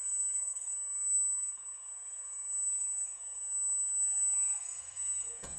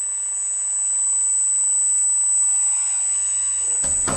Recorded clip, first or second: second